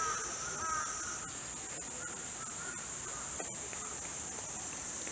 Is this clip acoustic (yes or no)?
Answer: yes